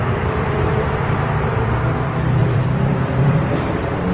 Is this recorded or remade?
remade